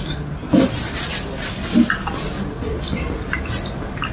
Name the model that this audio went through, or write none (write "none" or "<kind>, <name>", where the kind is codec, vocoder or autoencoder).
none